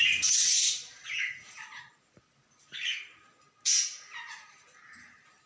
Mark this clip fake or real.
real